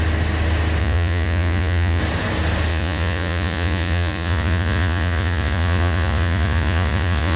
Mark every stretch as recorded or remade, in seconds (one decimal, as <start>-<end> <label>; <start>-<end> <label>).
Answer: 0.0-0.8 recorded; 0.8-2.0 remade; 2.0-2.7 recorded; 2.7-7.4 remade